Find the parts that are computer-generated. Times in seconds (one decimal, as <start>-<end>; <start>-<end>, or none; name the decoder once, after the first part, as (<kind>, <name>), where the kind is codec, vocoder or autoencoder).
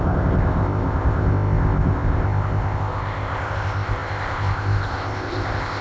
0.0-5.8 (codec, ZipCodec)